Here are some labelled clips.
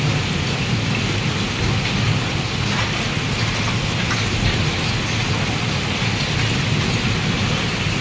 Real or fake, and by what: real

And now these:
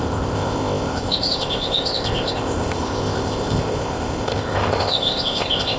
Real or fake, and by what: fake, codec, ZipCodec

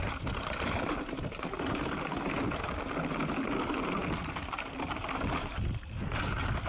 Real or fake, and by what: real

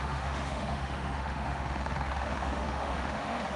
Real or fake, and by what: fake, autoencoder, DAC-VAE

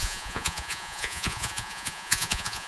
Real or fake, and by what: fake, vocoder, Vocos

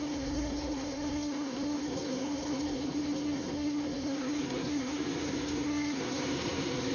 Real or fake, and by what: fake, codec, SNAC